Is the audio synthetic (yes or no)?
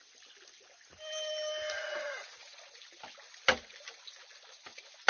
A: no